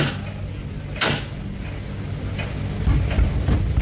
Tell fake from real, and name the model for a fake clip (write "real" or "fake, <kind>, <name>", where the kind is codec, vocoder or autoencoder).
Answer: real